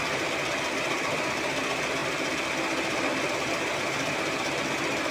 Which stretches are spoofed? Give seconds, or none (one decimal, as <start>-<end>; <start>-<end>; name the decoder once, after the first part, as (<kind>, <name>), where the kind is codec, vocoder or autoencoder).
none